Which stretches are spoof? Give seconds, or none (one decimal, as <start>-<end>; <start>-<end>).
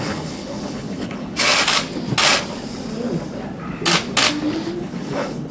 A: 0.0-1.5; 4.8-5.5